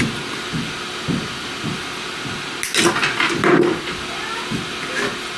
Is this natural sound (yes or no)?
yes